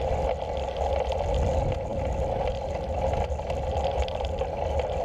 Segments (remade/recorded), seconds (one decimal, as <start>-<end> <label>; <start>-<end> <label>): 0.0-5.0 recorded